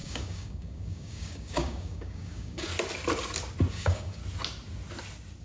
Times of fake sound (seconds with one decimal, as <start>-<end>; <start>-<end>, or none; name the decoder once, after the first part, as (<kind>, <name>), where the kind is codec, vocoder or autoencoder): 0.0-2.7 (codec, DAC); 3.7-4.2